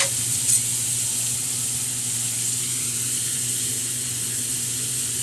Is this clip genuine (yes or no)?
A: no